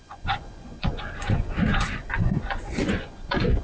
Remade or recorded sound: remade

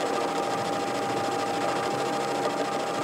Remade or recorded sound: recorded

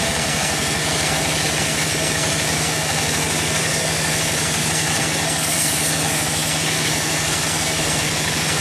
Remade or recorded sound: remade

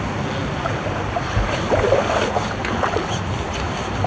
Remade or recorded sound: recorded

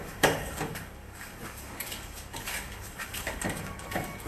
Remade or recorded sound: remade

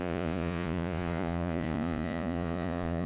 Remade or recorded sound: remade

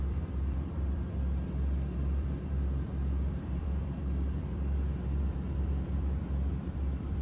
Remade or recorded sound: remade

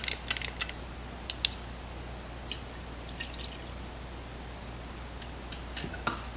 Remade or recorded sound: recorded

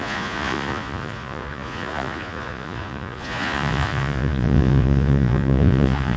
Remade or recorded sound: remade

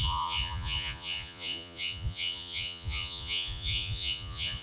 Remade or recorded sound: remade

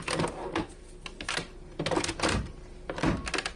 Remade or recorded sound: recorded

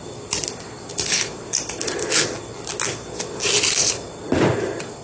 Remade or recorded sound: recorded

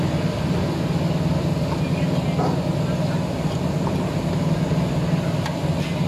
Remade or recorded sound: recorded